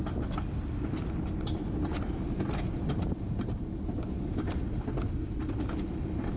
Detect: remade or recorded recorded